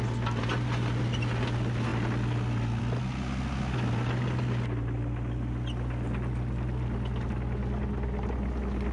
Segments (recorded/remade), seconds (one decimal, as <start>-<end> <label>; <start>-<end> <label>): 0.0-8.9 recorded